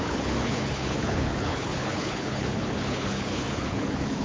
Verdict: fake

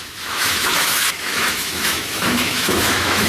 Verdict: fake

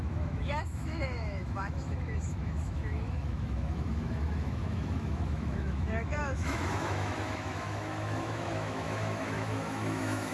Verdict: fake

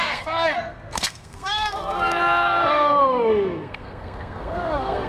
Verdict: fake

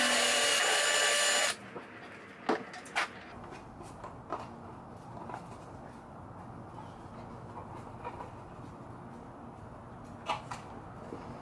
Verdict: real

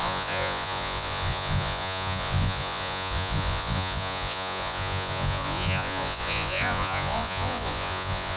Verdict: fake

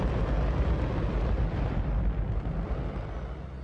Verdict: real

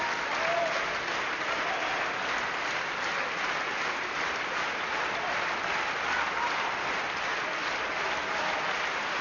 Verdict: real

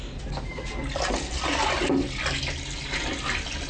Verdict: real